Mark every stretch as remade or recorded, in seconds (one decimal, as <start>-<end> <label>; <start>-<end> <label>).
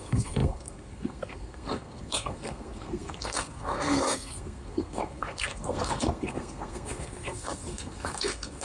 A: 0.0-8.6 remade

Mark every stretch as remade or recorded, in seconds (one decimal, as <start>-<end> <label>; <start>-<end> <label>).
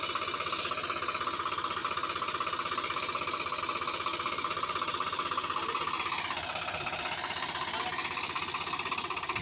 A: 0.0-4.1 recorded; 4.1-9.4 remade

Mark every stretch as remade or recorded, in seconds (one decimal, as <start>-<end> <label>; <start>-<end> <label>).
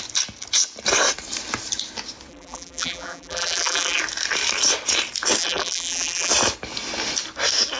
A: 0.0-2.3 recorded; 2.3-4.0 remade; 4.0-5.4 recorded; 5.4-6.3 remade; 6.3-7.8 recorded